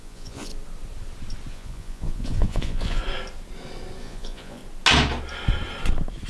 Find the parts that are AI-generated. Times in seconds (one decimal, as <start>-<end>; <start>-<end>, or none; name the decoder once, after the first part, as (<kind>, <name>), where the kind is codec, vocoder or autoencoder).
0.0-0.5 (vocoder, Vocos); 1.5-3.0; 4.0-4.6